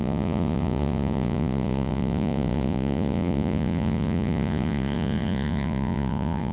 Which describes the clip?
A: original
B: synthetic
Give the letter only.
B